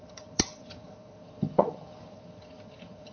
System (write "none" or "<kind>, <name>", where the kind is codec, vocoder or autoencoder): vocoder, HiFi-GAN